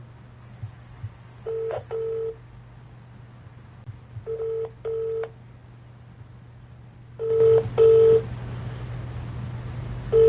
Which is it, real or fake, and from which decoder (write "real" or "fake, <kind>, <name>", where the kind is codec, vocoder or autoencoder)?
real